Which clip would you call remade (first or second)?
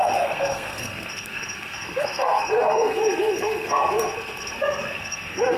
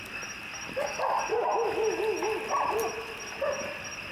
first